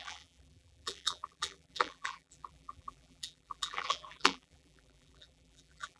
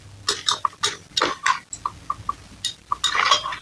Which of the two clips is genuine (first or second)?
second